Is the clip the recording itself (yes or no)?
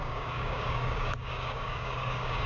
no